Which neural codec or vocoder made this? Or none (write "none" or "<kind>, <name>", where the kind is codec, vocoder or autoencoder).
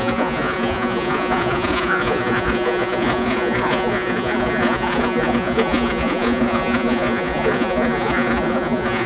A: vocoder, Vocos